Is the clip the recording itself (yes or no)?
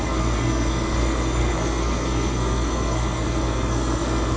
no